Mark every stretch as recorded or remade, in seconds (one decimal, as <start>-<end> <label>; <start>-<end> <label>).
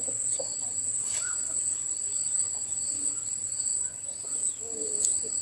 0.0-2.4 recorded; 2.4-3.2 remade; 3.2-3.7 recorded; 3.7-4.3 remade; 4.3-5.4 recorded